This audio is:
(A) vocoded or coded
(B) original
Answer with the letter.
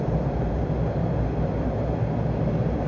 B